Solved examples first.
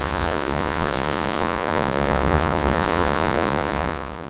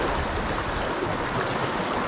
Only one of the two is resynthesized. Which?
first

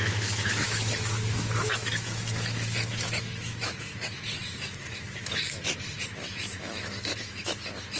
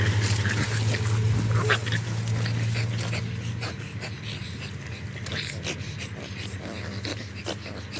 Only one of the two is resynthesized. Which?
first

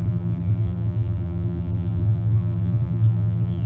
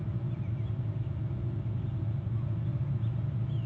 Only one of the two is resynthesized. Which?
first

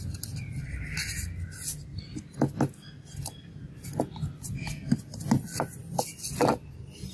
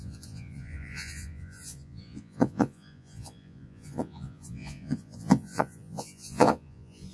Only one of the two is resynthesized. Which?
second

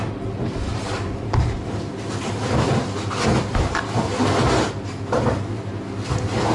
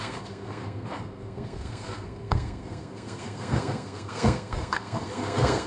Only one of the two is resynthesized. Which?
second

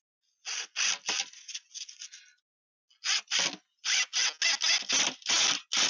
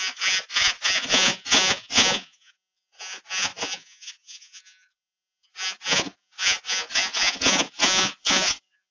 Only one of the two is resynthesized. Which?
second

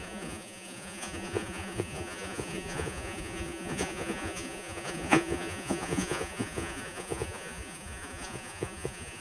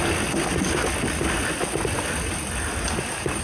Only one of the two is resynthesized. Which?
first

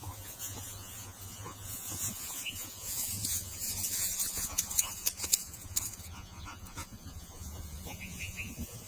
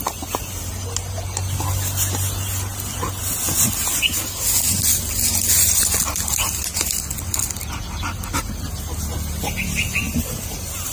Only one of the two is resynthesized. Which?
first